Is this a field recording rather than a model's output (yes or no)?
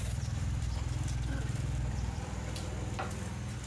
no